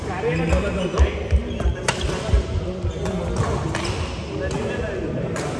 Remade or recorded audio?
recorded